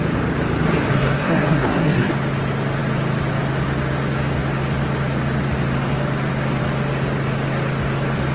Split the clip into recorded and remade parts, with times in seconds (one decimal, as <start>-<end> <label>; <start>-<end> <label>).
0.0-0.9 recorded; 0.9-2.1 remade; 2.1-8.3 recorded